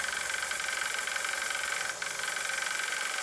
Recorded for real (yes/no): yes